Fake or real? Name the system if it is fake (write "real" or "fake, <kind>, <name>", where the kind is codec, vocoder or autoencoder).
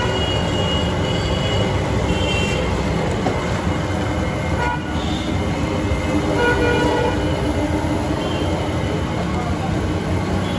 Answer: real